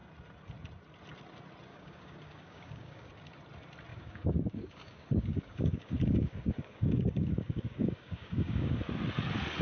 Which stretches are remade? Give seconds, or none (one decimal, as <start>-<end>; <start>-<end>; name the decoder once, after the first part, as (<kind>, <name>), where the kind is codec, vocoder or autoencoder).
1.7-3.1 (codec, DAC); 3.9-8.8